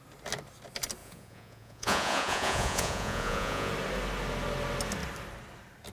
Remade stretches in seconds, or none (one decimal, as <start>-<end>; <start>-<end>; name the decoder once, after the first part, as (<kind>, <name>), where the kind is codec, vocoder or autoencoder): 1.0-3.7 (vocoder, Vocos)